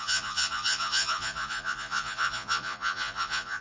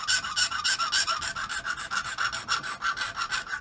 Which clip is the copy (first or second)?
first